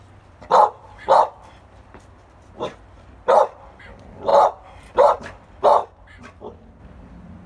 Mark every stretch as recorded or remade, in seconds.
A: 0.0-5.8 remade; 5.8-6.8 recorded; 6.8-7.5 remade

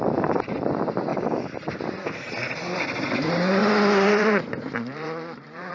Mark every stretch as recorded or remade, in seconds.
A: 0.0-1.1 remade; 1.1-3.1 recorded; 3.1-3.6 remade; 3.6-4.1 recorded; 4.1-5.7 remade